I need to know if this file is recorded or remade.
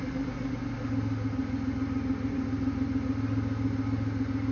recorded